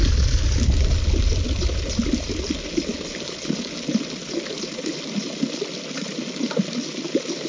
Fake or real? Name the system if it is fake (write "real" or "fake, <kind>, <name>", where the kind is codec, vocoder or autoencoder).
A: real